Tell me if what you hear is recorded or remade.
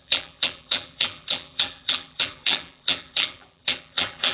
remade